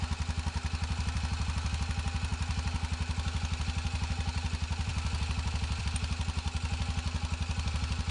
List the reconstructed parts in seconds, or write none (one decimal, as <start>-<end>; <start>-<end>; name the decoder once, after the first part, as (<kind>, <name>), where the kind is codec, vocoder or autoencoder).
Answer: none